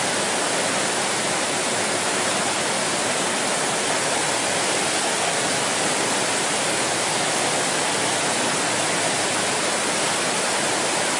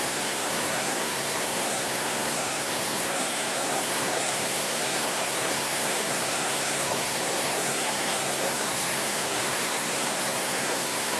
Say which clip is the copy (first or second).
second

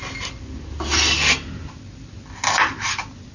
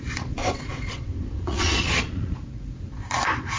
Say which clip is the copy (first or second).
second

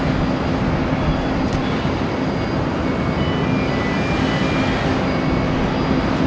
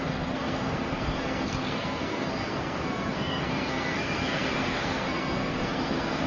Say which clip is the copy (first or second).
second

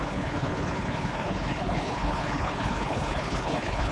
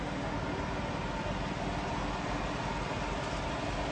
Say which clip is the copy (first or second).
first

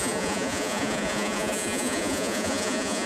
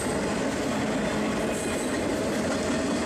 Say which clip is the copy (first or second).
first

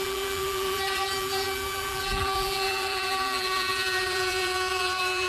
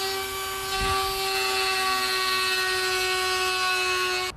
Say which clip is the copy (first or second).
first